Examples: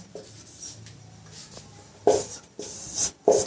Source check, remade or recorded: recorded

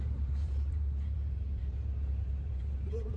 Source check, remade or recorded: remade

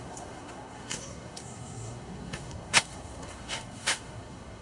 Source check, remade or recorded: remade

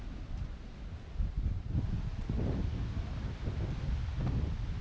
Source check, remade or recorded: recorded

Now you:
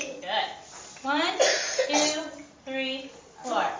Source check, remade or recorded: recorded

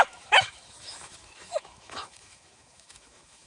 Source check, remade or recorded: remade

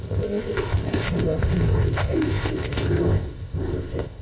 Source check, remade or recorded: remade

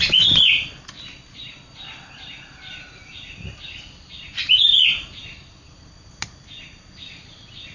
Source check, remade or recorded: recorded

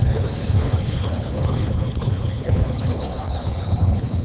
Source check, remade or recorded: remade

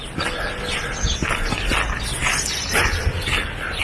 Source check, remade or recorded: recorded